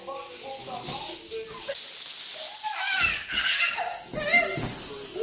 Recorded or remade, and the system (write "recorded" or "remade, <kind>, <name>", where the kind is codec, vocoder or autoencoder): recorded